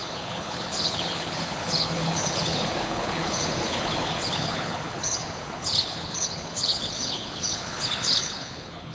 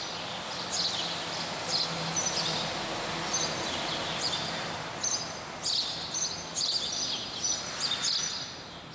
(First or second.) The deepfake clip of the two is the first